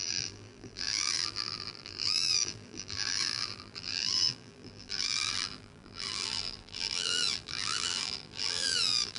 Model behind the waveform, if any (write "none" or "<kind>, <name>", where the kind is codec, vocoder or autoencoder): vocoder, BigVGAN v2